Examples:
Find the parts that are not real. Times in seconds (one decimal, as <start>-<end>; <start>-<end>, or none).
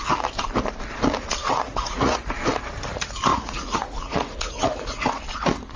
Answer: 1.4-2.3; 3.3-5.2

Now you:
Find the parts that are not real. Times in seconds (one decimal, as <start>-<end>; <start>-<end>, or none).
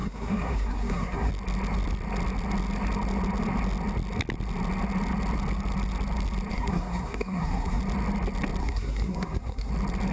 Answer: 0.0-1.3; 6.5-7.8; 8.6-9.7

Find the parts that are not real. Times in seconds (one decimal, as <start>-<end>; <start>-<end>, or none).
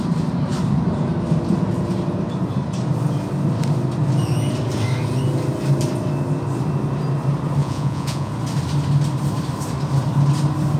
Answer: 7.6-8.3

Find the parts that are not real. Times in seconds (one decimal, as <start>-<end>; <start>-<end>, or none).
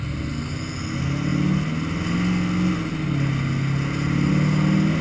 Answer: none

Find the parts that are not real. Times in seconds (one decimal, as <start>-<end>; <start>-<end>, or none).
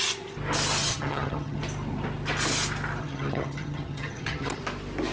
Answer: 0.8-1.6; 3.0-4.6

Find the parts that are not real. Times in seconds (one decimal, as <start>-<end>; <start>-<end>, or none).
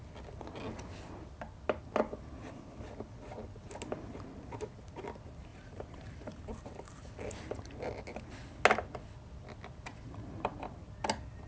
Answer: 5.5-7.1; 9.9-10.8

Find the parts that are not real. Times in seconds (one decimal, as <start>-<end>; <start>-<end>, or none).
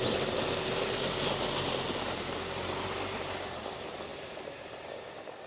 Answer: none